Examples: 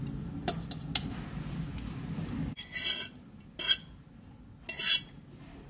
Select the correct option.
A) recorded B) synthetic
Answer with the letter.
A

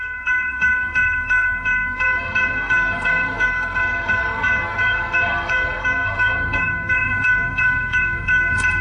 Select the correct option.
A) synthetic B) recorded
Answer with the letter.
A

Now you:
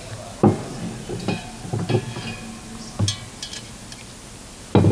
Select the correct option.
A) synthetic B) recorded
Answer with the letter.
B